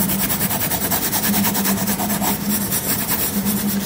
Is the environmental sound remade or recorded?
recorded